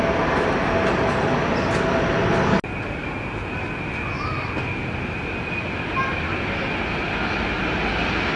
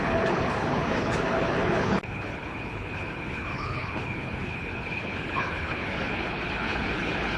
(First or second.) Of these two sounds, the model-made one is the second